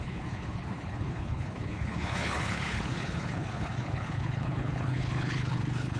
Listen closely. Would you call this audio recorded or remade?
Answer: remade